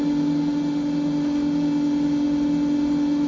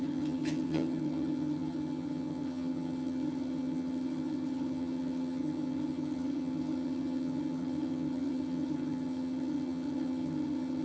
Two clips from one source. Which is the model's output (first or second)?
second